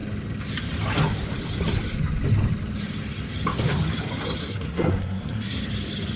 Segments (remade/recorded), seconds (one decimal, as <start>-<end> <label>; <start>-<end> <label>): 0.0-4.4 recorded; 4.4-5.6 remade; 5.6-6.2 recorded